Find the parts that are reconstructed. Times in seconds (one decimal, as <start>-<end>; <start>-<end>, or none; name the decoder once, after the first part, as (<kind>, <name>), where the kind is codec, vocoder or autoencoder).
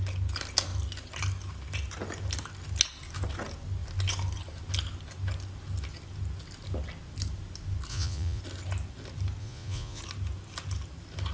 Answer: 7.9-8.4 (vocoder, Vocos); 9.4-10.0